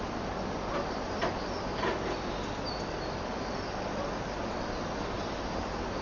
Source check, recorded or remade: recorded